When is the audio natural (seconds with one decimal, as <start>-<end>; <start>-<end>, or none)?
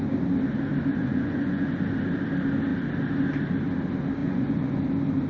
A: 0.0-0.9; 1.7-4.2; 4.8-5.3